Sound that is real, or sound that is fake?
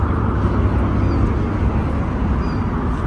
real